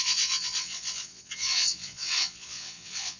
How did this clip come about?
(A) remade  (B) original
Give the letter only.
A